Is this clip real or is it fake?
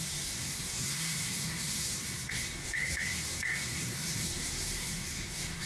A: fake